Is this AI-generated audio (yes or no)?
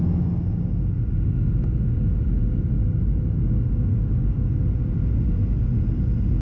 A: no